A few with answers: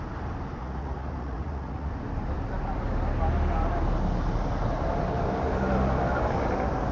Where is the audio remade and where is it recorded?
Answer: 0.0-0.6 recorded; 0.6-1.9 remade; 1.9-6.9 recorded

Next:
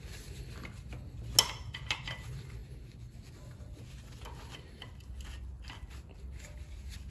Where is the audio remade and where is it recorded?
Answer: 0.0-7.1 recorded

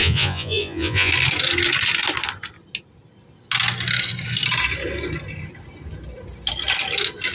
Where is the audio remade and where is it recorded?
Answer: 0.0-1.1 remade; 1.1-7.3 recorded

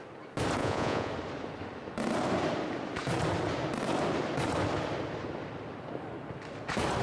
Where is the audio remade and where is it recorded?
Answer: 0.0-0.6 recorded; 0.6-1.1 remade; 1.1-7.0 recorded

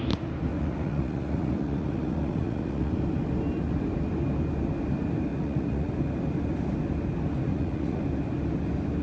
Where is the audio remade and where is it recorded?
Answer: 0.0-0.5 recorded; 0.5-2.9 remade; 2.9-5.3 recorded; 5.3-5.9 remade; 5.9-7.5 recorded; 7.5-8.0 remade; 8.0-9.0 recorded